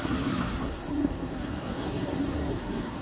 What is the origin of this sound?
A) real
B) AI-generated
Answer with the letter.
B